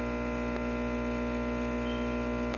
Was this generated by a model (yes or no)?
no